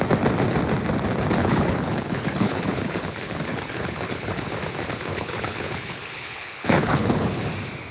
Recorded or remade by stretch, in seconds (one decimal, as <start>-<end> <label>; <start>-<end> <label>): 0.0-1.4 recorded; 1.4-4.5 remade; 4.5-5.1 recorded; 5.1-7.5 remade; 7.5-7.9 recorded